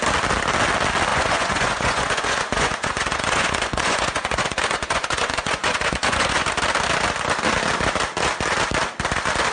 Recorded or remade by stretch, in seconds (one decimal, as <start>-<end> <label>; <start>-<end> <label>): 0.0-1.1 recorded; 1.1-6.4 remade; 6.4-9.5 recorded